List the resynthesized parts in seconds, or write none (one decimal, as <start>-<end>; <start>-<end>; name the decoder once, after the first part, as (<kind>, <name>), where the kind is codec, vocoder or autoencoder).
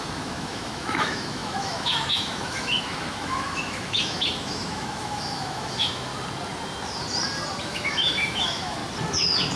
0.0-6.1 (autoencoder, DAC-VAE); 7.6-8.8